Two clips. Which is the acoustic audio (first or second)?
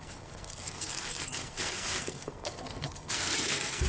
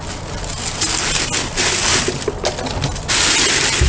second